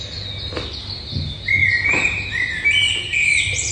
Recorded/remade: recorded